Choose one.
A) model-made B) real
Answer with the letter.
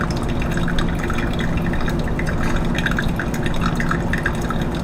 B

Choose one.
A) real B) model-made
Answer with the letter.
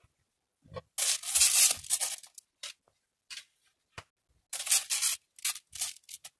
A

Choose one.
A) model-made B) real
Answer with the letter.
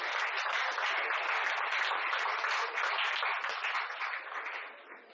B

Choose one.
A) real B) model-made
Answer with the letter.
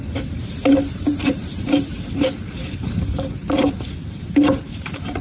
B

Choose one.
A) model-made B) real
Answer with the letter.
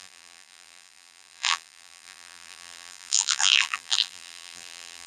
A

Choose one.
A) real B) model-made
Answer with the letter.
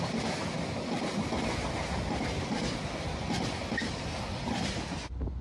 A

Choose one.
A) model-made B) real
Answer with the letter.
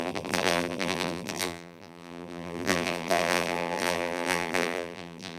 A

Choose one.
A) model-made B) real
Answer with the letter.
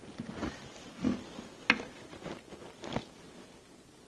B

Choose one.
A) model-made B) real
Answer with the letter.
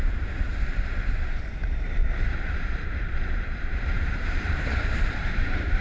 A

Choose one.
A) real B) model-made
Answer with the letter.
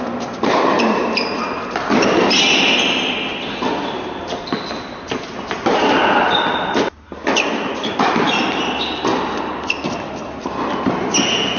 A